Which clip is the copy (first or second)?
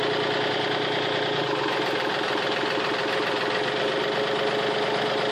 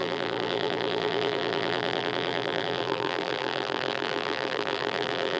second